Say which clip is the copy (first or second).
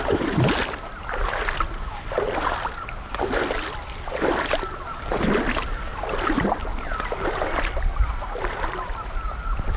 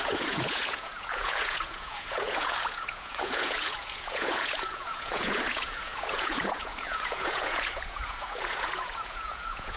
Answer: second